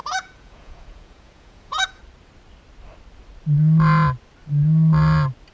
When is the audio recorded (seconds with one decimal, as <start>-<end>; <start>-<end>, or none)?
2.0-5.5